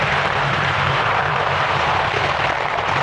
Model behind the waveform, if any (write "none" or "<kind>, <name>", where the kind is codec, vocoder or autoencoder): vocoder, BigVGAN v2